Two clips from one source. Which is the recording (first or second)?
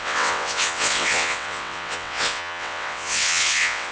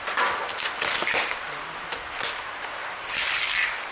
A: second